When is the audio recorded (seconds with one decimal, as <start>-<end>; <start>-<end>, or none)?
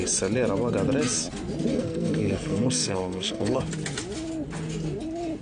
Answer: 0.0-1.7; 3.6-5.4